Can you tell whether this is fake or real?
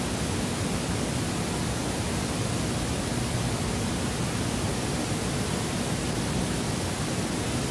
real